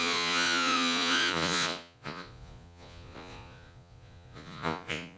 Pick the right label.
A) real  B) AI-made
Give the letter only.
B